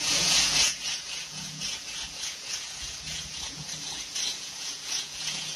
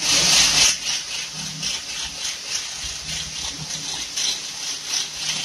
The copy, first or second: first